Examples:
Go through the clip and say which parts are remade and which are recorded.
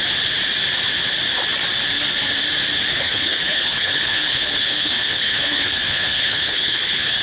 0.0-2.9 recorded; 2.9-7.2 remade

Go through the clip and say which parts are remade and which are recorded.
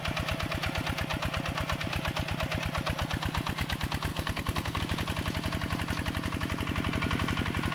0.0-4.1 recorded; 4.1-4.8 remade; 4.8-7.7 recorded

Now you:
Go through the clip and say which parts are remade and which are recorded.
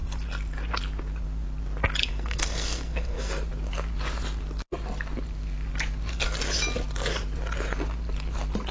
0.0-2.0 recorded; 2.0-3.3 remade; 3.3-8.7 recorded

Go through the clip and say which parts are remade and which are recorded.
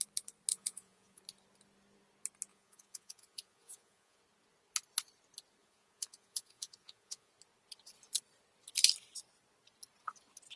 0.0-0.5 recorded; 0.5-1.2 remade; 1.2-2.5 recorded; 2.5-4.2 remade; 4.2-5.6 recorded; 5.6-7.3 remade; 7.3-10.6 recorded